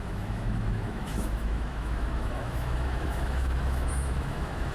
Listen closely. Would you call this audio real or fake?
fake